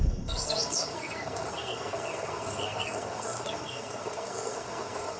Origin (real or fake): fake